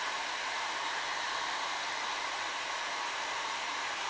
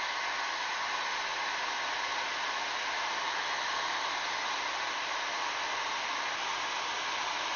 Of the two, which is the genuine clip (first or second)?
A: second